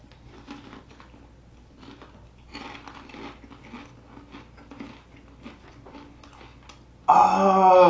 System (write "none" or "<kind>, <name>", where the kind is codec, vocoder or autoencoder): none